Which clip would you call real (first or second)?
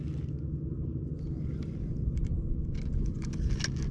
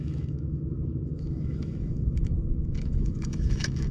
first